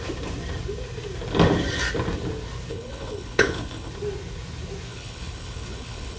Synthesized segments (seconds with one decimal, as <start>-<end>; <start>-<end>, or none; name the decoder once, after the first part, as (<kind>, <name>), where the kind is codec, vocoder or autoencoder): 2.7-3.9 (codec, HILCodec); 4.9-6.2